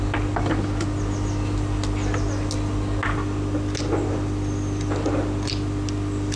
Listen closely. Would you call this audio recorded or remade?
recorded